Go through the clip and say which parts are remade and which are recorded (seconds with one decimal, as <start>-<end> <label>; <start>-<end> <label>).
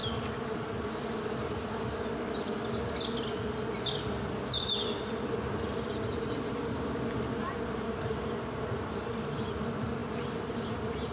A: 0.0-11.1 recorded